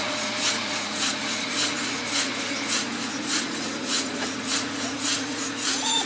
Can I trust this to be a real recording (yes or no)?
no